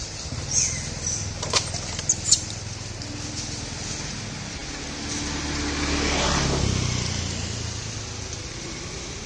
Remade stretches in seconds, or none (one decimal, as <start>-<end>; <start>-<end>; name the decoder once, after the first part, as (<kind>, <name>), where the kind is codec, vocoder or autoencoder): none